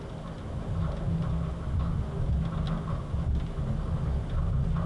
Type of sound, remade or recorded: recorded